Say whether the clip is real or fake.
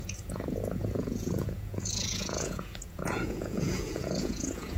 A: fake